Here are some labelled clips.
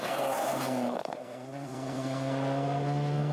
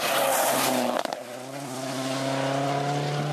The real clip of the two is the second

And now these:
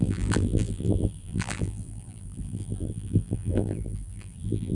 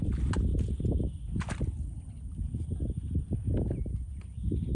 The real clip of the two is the second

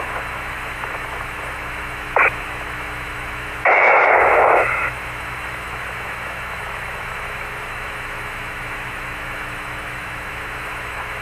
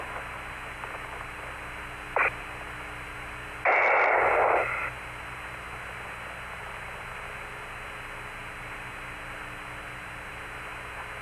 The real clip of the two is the second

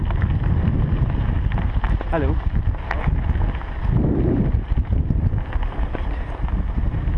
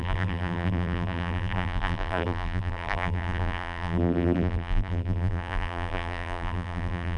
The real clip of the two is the first